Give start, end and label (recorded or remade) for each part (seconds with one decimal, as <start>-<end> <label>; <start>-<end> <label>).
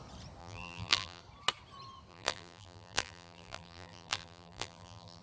0.0-0.4 recorded; 0.4-1.2 remade; 1.2-2.1 recorded; 2.1-5.2 remade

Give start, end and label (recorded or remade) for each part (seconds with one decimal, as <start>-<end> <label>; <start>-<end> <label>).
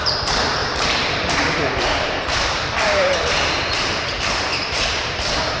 0.0-0.6 recorded; 0.6-3.6 remade; 3.6-4.5 recorded; 4.5-5.6 remade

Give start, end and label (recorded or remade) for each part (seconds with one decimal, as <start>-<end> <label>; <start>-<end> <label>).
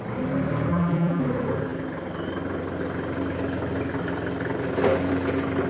0.0-0.7 recorded; 0.7-1.2 remade; 1.2-5.7 recorded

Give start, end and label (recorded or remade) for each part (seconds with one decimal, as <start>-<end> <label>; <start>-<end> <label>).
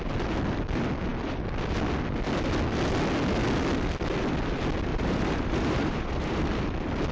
0.0-4.9 recorded; 4.9-6.4 remade; 6.4-7.1 recorded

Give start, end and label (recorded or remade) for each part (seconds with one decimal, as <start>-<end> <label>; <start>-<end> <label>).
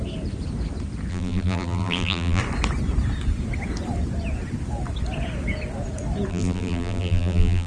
0.0-1.1 recorded; 1.1-2.4 remade; 2.4-6.3 recorded; 6.3-7.7 remade